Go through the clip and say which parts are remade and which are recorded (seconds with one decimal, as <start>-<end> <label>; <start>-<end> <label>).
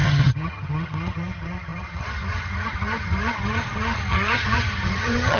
0.0-5.4 remade